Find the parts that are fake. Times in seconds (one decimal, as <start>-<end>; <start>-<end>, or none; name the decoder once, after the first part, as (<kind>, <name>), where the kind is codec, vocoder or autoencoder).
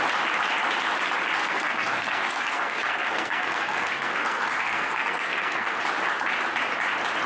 1.4-5.8 (codec, SNAC)